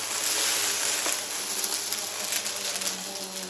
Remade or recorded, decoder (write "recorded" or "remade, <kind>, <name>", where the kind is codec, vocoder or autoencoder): recorded